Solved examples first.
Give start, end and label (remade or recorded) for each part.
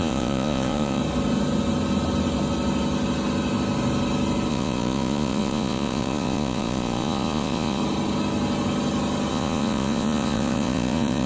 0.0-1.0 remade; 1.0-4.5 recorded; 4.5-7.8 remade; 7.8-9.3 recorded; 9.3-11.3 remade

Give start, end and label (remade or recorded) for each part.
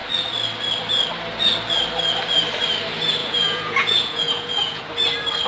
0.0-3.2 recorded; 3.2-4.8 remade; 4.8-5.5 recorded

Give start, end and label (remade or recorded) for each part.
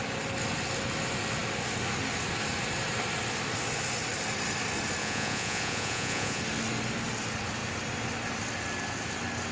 0.0-5.0 recorded; 5.0-6.4 remade; 6.4-9.5 recorded